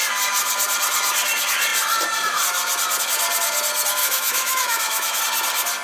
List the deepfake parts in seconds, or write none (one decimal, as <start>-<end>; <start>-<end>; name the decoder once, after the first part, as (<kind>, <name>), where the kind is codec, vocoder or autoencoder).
4.0-5.2 (autoencoder, DAC-VAE)